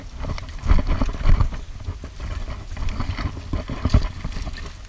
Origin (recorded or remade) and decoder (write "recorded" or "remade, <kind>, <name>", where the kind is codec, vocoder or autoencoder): recorded